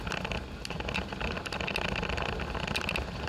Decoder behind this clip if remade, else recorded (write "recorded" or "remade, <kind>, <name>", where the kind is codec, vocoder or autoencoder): recorded